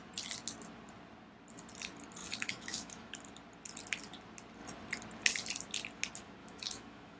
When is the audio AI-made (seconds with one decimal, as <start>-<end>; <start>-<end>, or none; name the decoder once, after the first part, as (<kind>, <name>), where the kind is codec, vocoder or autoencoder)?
2.2-3.1 (autoencoder, DAC-VAE); 6.4-7.2